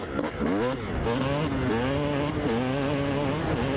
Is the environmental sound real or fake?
real